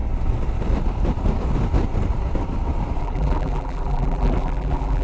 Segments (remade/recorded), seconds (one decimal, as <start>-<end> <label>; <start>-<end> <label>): 0.0-3.0 recorded; 3.0-5.0 remade